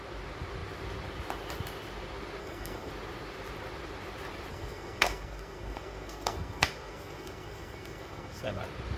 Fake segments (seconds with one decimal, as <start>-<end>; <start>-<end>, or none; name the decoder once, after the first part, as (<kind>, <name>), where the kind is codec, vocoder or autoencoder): 2.4-2.9 (codec, SNAC); 4.5-8.6